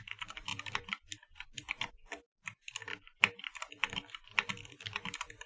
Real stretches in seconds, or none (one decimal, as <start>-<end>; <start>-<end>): 0.0-5.5